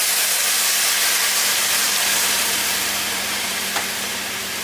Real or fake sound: fake